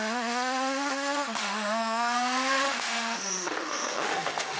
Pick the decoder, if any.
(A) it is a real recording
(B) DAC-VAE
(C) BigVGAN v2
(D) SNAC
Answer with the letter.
B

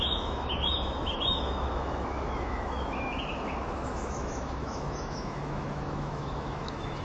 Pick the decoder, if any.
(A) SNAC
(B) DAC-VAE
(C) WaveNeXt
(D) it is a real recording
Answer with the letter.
B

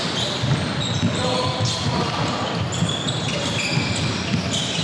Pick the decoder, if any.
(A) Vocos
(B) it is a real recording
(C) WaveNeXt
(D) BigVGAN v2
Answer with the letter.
B